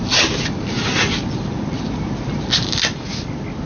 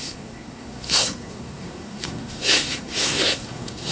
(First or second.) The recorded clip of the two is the first